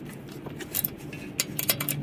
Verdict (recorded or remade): recorded